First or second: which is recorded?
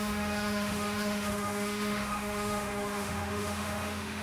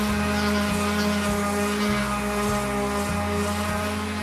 second